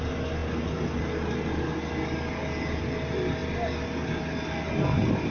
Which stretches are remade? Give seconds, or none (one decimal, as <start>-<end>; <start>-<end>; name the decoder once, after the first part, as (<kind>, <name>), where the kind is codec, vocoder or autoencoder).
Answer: none

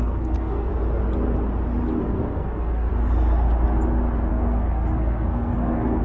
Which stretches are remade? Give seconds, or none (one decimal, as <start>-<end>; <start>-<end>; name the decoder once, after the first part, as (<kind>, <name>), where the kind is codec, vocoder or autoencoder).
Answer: 0.0-0.7 (codec, SNAC); 2.0-2.9; 4.3-6.0

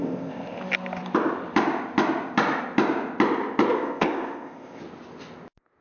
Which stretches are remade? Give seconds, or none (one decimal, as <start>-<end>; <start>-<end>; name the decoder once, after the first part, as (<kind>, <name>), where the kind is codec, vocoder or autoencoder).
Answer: 0.0-0.6 (codec, ZipCodec); 3.7-4.8